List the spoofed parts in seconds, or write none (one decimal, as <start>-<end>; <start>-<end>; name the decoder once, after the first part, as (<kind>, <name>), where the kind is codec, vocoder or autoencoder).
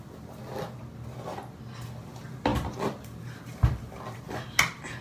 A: none